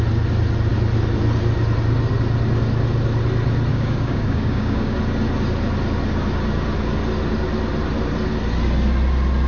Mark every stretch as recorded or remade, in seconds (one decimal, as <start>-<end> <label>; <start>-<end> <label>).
0.0-3.7 recorded; 3.7-5.0 remade; 5.0-9.5 recorded